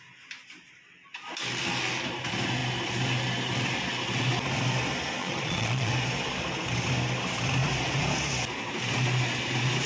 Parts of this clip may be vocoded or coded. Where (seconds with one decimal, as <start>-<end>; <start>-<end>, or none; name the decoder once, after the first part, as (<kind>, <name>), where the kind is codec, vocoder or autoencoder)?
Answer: 5.2-5.9 (vocoder, Vocos)